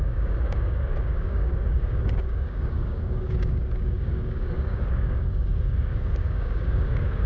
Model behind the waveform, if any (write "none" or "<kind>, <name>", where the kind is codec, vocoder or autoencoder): codec, DAC